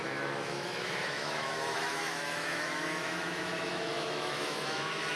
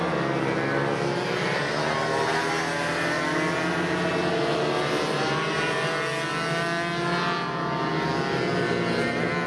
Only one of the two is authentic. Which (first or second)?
second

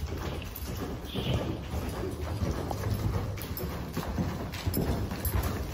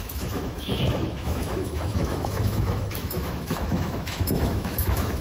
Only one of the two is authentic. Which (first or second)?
first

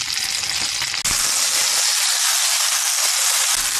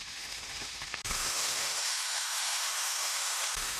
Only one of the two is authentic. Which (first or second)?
first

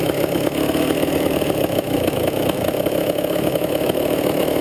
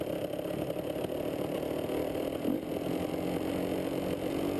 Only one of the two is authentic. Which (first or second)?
second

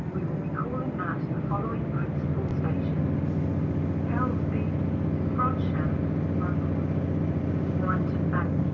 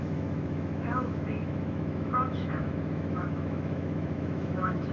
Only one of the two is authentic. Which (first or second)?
first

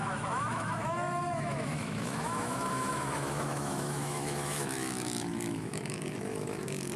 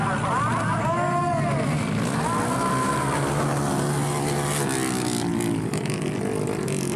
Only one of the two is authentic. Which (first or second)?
second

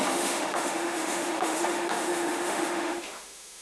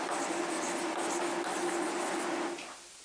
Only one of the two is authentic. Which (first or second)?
second